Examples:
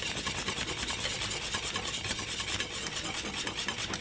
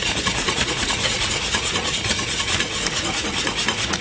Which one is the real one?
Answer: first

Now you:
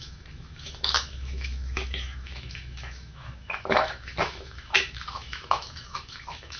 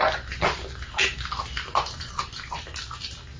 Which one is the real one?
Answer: second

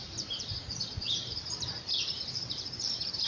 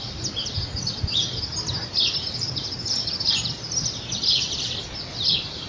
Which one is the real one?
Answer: second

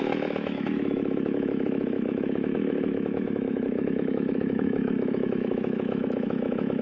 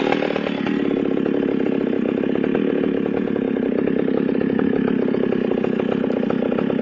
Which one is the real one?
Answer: second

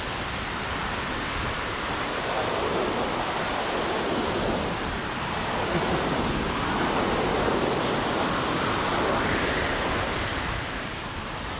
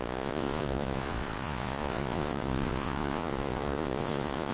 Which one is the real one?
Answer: first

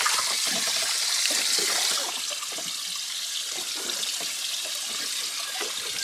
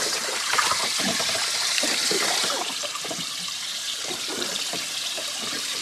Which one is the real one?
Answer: first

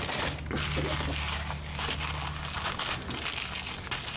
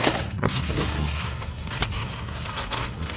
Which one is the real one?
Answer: first